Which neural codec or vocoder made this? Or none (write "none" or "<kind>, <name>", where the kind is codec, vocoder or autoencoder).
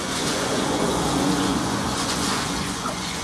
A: vocoder, Vocos